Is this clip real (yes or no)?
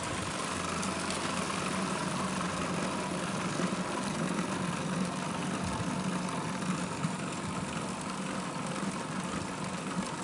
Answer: yes